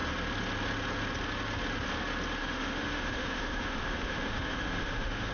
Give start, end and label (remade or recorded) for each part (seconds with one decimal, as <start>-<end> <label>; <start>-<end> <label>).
0.0-2.4 recorded; 2.4-5.3 remade